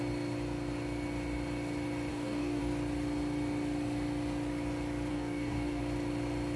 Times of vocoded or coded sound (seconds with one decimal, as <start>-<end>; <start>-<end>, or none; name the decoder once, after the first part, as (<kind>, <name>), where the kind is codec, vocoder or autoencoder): 2.1-2.6 (codec, DAC); 5.1-5.8